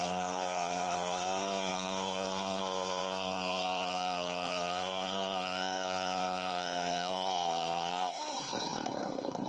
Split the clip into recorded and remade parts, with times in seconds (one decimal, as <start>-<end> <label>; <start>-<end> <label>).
0.0-9.5 remade